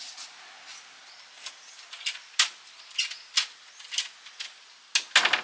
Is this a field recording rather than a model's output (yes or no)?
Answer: yes